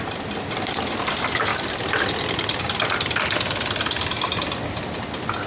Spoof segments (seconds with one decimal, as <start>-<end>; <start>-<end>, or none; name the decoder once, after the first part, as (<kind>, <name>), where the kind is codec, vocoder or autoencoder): 1.5-4.8 (vocoder, BigVGAN v2)